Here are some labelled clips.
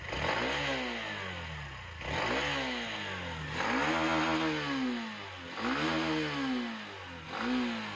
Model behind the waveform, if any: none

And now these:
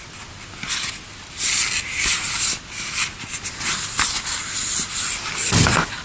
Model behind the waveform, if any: none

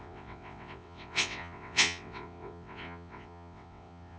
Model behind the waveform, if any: vocoder, WaveNeXt